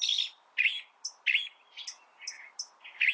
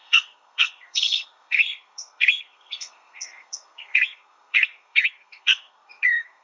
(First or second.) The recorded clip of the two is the first